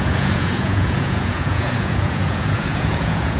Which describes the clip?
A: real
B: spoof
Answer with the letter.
B